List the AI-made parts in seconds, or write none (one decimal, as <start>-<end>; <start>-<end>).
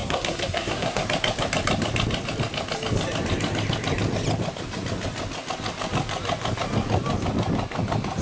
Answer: 0.0-1.0